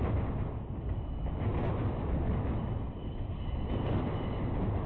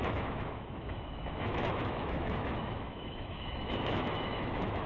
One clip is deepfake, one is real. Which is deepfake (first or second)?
second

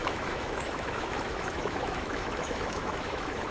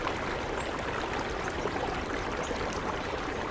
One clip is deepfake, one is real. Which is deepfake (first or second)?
first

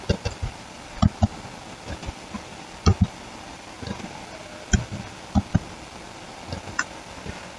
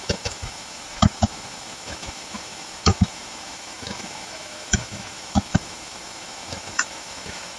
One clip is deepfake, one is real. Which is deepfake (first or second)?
second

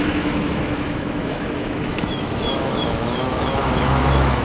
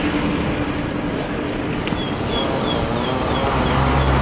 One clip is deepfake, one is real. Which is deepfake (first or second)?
first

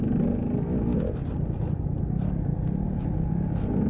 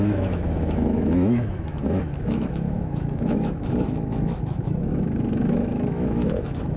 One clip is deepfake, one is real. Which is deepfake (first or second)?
second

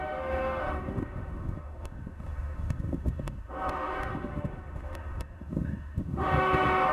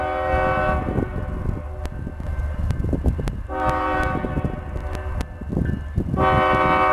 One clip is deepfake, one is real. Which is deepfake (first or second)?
first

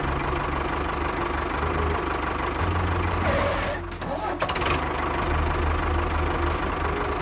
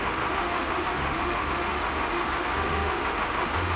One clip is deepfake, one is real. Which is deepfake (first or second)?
second